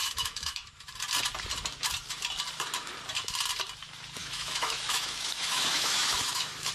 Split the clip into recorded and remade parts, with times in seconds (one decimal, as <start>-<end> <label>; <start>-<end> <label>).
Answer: 0.0-0.7 remade; 0.7-4.2 recorded; 4.2-6.7 remade